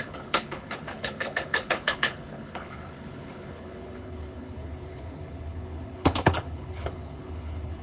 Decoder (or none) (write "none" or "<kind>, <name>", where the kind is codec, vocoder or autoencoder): codec, HILCodec